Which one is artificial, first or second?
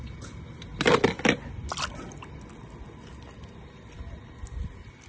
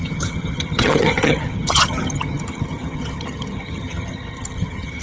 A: second